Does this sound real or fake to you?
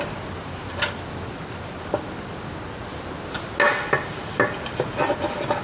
real